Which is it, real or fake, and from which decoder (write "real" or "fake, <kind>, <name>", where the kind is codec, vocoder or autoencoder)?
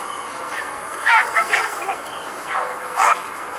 fake, codec, SNAC